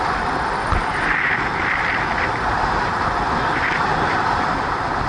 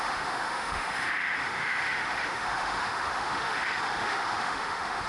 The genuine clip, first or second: first